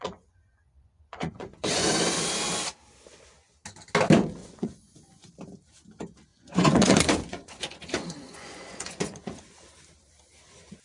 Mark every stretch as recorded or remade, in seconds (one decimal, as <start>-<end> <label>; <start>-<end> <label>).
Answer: 0.0-1.9 remade; 1.9-4.4 recorded; 4.4-5.3 remade; 5.3-6.3 recorded; 6.3-9.5 remade; 9.5-10.8 recorded